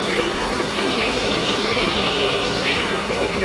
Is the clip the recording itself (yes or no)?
no